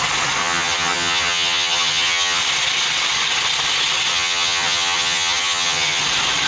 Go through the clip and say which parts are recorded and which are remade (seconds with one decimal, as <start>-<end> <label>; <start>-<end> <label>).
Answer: 0.0-0.4 recorded; 0.4-2.4 remade; 2.4-4.1 recorded; 4.1-6.0 remade; 6.0-6.5 recorded